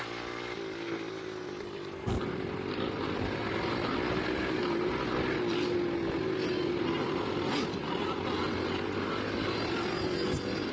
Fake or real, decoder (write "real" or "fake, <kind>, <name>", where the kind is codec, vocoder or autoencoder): real